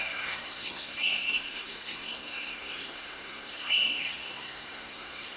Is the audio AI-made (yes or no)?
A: yes